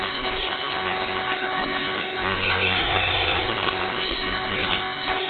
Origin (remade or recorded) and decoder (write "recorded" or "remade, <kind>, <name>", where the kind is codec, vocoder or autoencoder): remade, codec, SNAC